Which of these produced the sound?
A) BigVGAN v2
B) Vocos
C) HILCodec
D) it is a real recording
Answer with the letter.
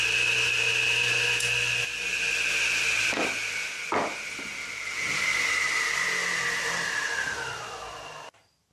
D